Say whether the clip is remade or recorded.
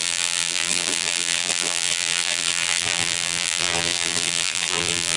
remade